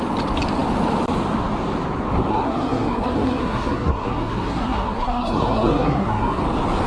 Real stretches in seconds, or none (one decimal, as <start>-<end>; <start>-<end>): 0.0-2.3; 6.4-6.9